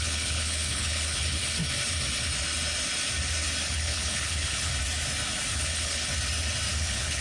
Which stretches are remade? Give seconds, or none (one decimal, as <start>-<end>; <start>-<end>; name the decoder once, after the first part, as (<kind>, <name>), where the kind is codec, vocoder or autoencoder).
0.0-1.6 (codec, HILCodec); 3.7-4.7; 5.5-6.1; 6.7-7.2